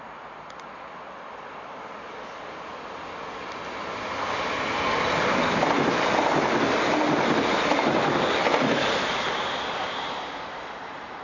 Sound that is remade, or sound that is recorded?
recorded